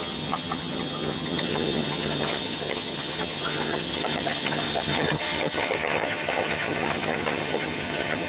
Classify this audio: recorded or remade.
remade